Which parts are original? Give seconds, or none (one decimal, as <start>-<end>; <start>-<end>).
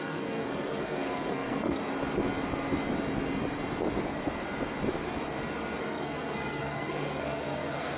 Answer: 1.8-5.8